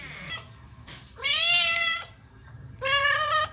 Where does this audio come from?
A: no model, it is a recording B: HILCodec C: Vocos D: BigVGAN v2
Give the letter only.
D